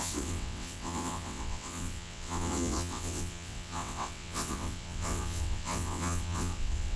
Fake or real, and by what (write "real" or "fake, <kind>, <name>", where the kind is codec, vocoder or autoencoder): fake, vocoder, WaveNeXt